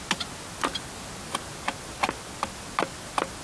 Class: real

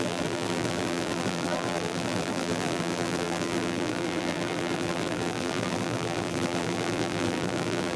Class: fake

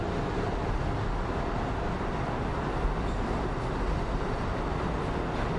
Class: real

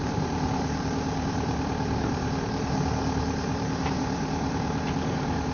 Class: fake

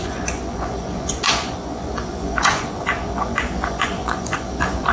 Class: fake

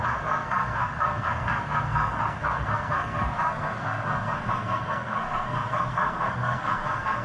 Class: fake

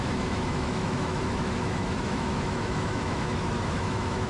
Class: fake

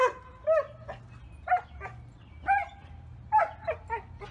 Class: real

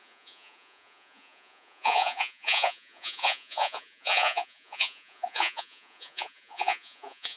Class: fake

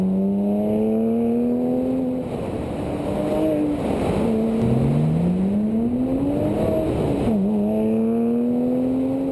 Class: real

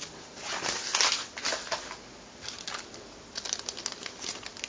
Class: real